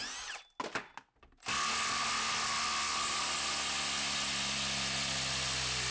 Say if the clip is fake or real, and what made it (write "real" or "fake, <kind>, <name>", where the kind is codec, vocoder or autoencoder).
real